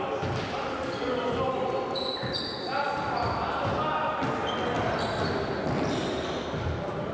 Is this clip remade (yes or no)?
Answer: no